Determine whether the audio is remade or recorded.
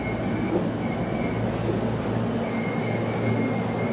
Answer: recorded